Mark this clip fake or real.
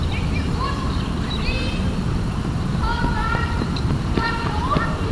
fake